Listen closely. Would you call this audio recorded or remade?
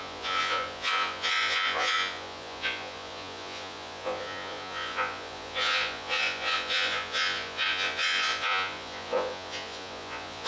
remade